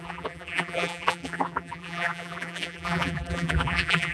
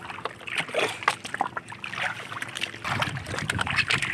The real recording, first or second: second